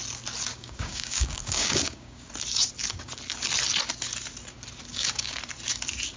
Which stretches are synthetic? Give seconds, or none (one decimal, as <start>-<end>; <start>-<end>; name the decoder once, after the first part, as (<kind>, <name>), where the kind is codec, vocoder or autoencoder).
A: 0.5-2.3 (codec, DAC); 4.9-5.4